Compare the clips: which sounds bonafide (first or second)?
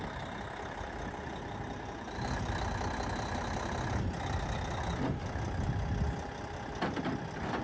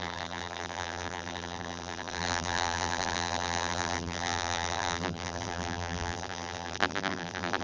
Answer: first